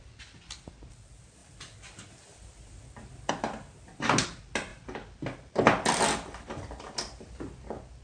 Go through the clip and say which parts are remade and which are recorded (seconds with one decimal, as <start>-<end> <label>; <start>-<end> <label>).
0.0-8.0 recorded